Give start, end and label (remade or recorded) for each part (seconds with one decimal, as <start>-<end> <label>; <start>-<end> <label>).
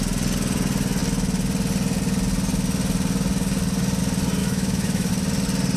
0.0-4.4 recorded; 4.4-5.1 remade; 5.1-5.8 recorded